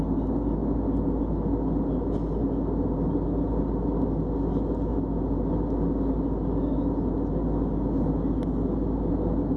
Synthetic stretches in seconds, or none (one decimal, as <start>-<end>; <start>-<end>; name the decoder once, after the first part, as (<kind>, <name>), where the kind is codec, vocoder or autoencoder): none